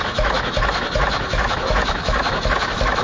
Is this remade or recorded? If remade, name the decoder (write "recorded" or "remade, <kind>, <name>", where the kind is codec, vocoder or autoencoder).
remade, autoencoder, DAC-VAE